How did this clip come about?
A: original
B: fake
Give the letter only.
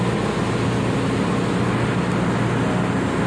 A